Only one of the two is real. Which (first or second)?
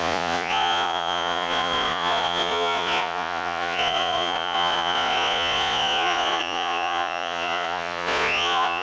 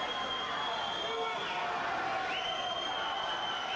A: second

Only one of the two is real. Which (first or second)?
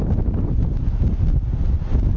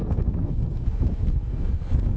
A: first